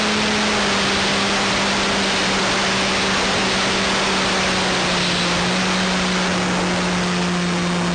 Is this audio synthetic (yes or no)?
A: no